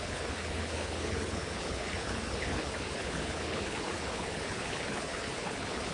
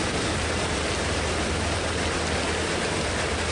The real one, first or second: second